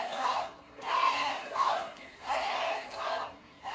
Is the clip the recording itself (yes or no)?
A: no